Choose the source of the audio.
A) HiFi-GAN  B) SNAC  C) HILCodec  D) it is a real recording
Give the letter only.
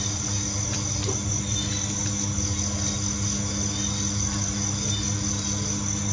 D